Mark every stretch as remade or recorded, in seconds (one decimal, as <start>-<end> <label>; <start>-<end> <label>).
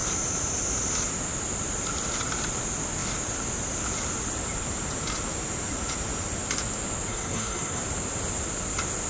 0.0-7.1 recorded; 7.1-7.8 remade; 7.8-9.1 recorded